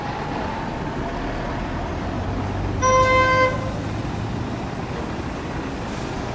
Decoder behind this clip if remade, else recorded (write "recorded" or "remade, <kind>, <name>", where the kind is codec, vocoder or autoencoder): recorded